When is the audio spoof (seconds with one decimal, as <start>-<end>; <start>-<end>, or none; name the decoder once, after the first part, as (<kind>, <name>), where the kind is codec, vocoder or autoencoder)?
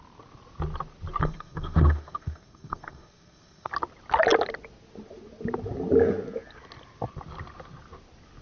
1.2-3.7 (codec, SNAC)